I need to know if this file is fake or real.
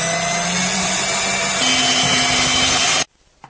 real